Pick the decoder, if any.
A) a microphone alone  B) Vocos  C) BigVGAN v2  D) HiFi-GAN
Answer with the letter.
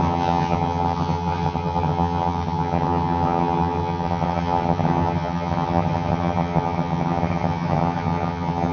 D